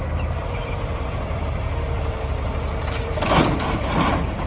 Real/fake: fake